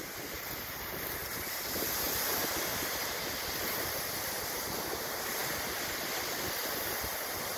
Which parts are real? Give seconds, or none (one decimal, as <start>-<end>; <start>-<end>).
0.0-5.4; 6.1-7.6